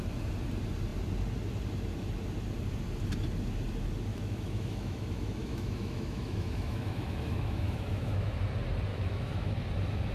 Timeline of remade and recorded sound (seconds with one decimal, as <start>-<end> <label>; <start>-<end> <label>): 0.0-4.1 recorded; 4.1-8.4 remade; 8.4-8.9 recorded; 8.9-9.6 remade; 9.6-10.1 recorded